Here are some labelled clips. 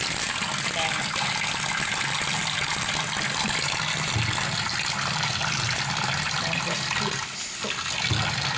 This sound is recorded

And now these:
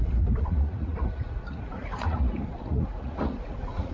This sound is remade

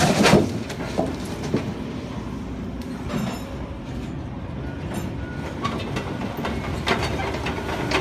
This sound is recorded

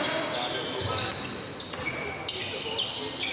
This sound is recorded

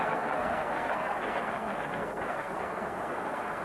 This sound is remade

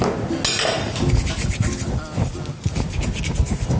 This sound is recorded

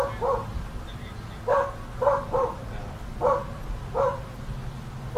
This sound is recorded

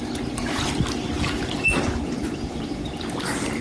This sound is recorded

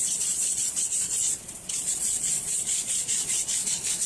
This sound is remade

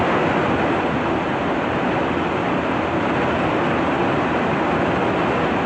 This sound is recorded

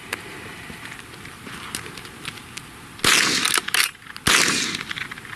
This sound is recorded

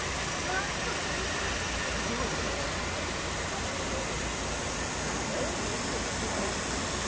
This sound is recorded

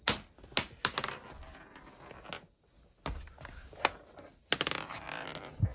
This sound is recorded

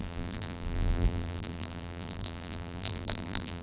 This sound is remade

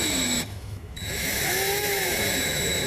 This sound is remade